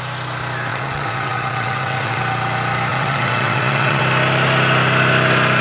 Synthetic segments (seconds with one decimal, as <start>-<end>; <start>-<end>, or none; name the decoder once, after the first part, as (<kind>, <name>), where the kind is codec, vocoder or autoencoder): 0.7-2.2 (vocoder, WaveNeXt); 2.9-4.0